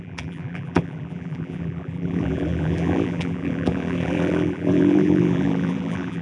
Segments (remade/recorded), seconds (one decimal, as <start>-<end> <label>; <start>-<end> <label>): 0.0-6.2 remade